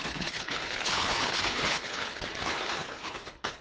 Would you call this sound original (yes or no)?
no